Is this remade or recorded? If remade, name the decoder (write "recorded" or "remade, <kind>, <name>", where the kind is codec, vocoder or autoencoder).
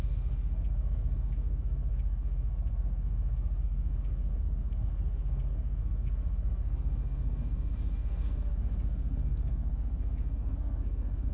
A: remade, codec, SNAC